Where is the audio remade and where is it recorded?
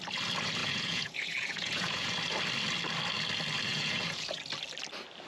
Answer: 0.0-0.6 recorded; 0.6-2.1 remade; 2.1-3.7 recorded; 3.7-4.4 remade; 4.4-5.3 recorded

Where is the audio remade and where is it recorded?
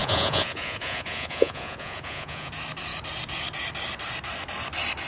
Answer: 0.0-2.5 remade; 2.5-5.1 recorded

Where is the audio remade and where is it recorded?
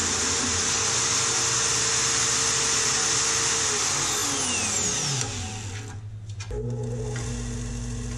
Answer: 0.0-8.2 recorded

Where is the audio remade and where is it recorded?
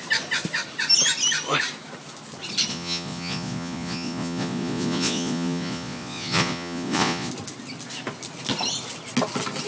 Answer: 0.0-2.7 recorded; 2.7-7.3 remade; 7.3-9.7 recorded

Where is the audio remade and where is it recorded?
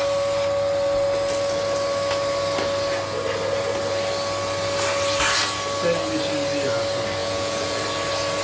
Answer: 0.0-7.2 recorded; 7.2-7.8 remade; 7.8-8.4 recorded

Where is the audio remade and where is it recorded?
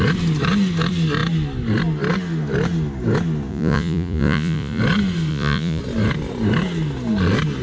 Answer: 0.0-3.5 recorded; 3.5-4.8 remade; 4.8-5.3 recorded; 5.3-5.8 remade; 5.8-7.6 recorded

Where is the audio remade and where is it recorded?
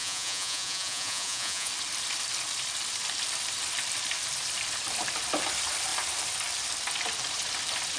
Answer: 0.0-1.7 remade; 1.7-8.0 recorded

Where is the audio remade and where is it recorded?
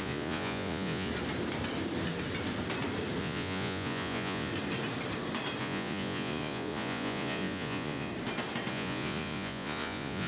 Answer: 0.0-1.1 remade; 1.1-3.2 recorded; 3.2-4.5 remade; 4.5-5.6 recorded; 5.6-8.1 remade; 8.1-8.7 recorded; 8.7-10.3 remade